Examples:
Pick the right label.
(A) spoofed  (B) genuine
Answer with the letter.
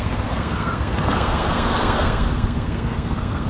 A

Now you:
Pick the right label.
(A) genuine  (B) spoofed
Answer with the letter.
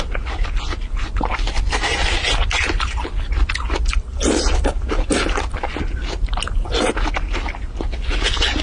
A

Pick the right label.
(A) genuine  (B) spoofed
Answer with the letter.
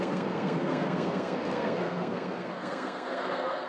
B